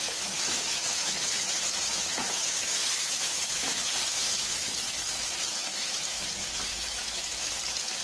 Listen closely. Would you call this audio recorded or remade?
remade